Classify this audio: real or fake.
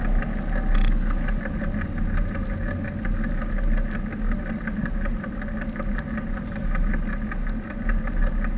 real